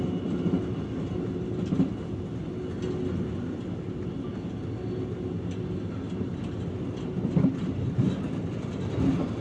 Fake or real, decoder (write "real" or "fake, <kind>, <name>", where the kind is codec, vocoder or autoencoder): real